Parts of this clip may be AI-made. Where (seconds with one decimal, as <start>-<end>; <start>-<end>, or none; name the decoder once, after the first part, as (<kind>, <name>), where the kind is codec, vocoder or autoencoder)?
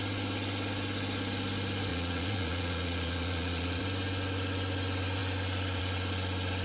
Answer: 1.9-3.8 (vocoder, Vocos)